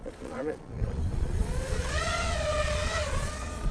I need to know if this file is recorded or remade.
remade